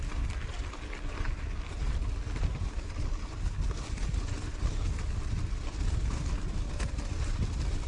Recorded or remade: recorded